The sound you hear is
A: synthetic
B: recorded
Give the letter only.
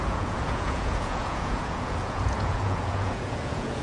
A